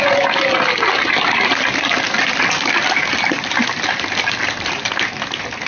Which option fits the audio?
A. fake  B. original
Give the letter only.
B